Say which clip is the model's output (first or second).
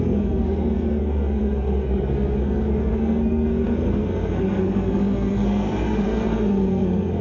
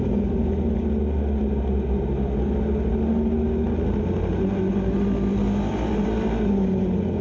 first